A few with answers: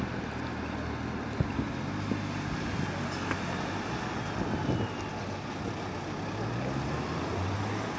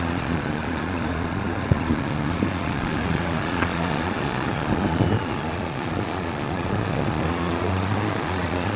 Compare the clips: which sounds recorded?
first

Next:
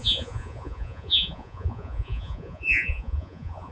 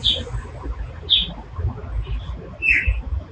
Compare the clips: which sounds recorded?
second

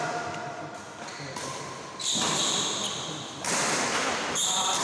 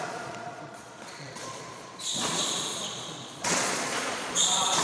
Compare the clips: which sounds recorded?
first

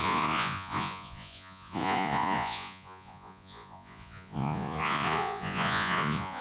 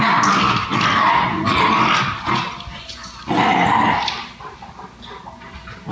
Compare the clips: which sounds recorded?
second